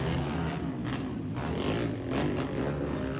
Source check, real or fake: real